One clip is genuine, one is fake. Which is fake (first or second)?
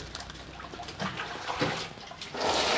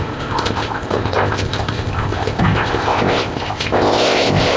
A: second